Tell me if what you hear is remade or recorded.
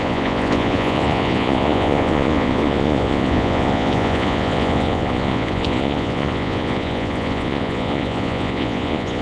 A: remade